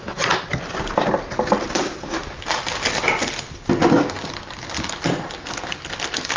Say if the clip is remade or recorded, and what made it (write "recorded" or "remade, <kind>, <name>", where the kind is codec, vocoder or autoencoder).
recorded